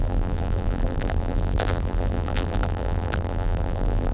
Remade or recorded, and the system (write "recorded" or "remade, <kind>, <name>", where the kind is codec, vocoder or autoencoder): remade, vocoder, BigVGAN v2